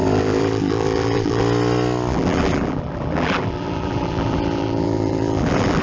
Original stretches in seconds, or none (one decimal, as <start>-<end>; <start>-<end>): 1.4-2.1